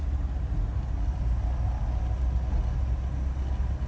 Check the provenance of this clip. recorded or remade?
recorded